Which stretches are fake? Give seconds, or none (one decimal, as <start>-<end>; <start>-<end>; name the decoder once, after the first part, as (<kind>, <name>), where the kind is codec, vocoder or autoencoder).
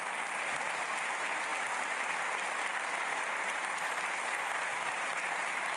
none